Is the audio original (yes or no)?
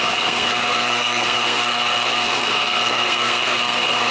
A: no